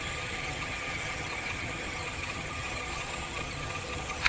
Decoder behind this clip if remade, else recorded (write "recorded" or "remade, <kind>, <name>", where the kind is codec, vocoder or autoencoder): remade, vocoder, HiFi-GAN